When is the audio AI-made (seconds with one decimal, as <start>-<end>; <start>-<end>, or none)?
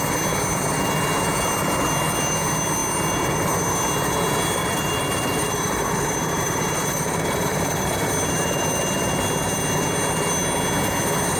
4.6-8.1